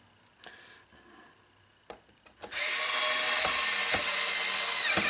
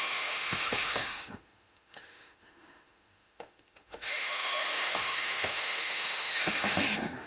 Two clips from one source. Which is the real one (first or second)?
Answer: first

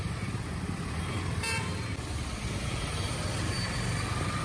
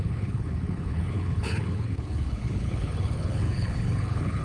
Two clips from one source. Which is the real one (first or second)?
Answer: first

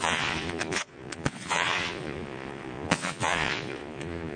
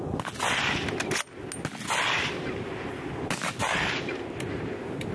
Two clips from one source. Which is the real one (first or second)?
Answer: second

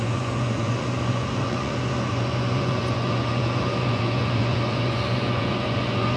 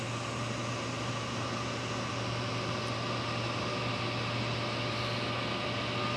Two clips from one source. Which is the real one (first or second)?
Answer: second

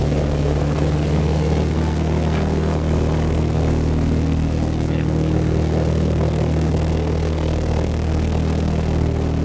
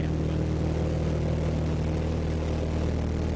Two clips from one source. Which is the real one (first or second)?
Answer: second